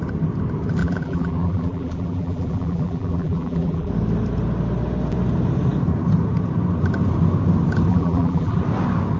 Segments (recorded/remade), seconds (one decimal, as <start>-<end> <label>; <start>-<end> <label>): 0.0-0.8 recorded; 0.8-3.9 remade; 3.9-7.9 recorded; 7.9-8.6 remade; 8.6-9.2 recorded